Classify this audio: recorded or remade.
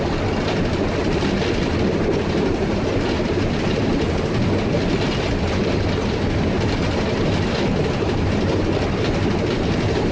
recorded